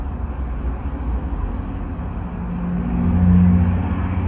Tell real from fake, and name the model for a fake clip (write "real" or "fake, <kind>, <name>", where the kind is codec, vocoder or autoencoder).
real